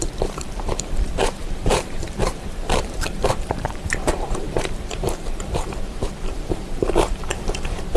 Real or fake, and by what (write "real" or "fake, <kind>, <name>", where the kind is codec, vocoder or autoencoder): fake, vocoder, BigVGAN v2